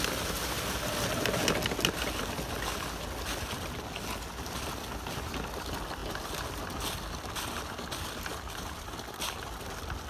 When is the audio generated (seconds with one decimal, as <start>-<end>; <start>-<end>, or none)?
none